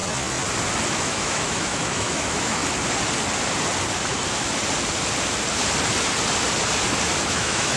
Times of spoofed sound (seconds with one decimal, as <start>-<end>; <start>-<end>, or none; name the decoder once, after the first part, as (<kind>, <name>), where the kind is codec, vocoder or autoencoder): 0.9-2.6 (autoencoder, DAC-VAE); 7.3-7.8